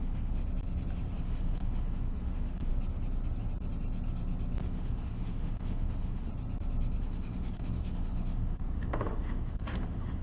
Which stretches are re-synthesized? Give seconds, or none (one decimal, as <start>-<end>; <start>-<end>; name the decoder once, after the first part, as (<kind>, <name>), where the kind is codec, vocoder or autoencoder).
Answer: 0.0-0.4 (autoencoder, DAC-VAE); 1.2-2.7; 4.6-6.3; 7.0-10.2